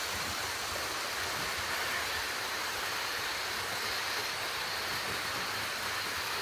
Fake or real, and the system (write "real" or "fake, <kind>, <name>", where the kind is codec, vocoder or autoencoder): fake, vocoder, BigVGAN v2